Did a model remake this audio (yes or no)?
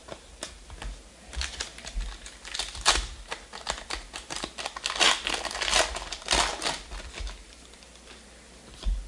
no